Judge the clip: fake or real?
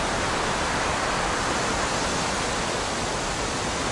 real